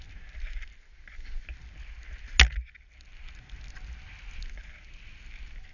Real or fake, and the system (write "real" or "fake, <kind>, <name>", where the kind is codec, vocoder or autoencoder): real